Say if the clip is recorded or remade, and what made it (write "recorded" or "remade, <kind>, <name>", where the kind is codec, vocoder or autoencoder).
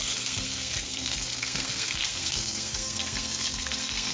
remade, codec, SNAC